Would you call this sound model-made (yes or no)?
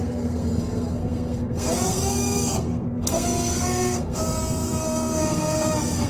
yes